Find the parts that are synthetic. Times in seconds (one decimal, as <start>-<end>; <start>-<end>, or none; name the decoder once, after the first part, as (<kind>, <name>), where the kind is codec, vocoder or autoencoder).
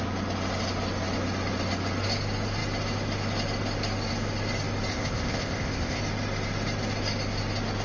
4.9-6.0 (codec, ZipCodec)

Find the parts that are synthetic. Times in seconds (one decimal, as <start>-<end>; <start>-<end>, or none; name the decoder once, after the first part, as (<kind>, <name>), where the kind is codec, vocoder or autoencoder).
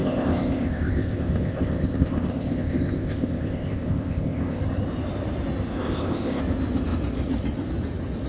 0.0-4.6 (codec, ZipCodec); 5.8-6.4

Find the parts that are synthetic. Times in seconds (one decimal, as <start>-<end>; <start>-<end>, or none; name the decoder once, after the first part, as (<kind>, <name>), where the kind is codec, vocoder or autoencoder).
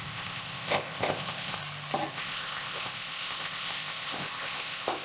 0.0-1.6 (codec, ZipCodec); 2.1-5.0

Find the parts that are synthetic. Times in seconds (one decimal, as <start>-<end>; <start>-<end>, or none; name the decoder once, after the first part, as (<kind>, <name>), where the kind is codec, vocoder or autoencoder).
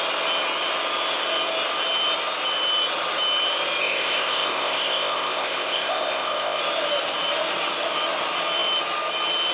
3.8-6.6 (codec, ZipCodec)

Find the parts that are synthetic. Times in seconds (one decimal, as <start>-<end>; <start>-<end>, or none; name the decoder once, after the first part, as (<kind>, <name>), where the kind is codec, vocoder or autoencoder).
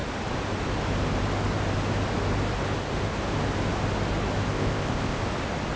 4.5-5.2 (codec, ZipCodec)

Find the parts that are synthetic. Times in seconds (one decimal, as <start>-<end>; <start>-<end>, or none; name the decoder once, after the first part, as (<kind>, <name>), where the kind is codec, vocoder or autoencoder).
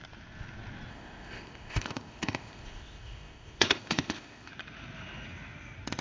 0.9-4.5 (codec, ZipCodec)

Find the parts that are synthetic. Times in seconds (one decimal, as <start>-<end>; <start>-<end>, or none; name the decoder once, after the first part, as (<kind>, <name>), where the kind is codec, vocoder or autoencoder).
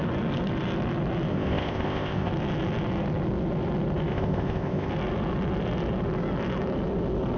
1.3-2.3 (codec, ZipCodec); 4.1-4.9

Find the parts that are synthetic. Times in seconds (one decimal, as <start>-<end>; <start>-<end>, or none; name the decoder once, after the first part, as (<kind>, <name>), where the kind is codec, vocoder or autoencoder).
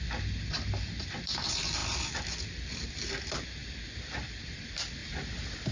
none